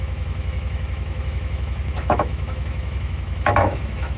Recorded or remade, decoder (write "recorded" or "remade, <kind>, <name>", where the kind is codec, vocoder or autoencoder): remade, autoencoder, DAC-VAE